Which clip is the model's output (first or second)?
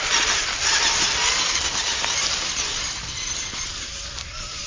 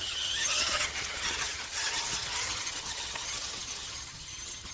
second